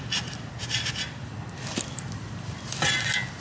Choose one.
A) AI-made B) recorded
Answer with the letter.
B